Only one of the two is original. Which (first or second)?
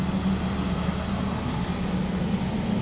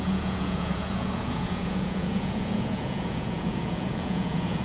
first